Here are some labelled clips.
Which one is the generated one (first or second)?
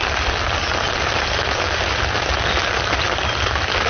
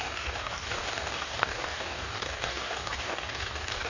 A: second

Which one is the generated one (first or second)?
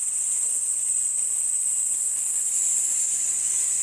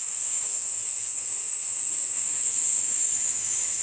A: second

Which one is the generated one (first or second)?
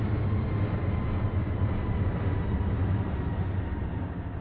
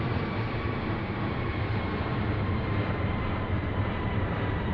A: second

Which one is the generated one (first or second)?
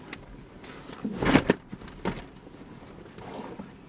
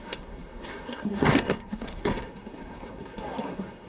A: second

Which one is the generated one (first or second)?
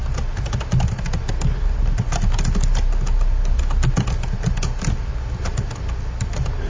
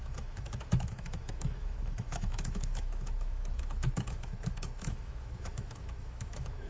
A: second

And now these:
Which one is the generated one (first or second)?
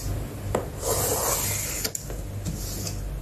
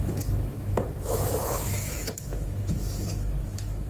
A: second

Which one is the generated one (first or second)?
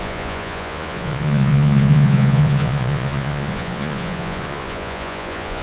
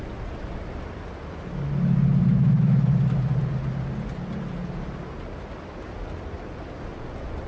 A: first